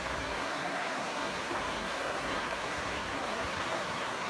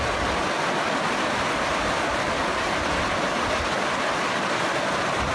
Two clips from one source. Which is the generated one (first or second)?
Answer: first